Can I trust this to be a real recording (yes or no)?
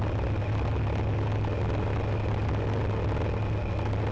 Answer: yes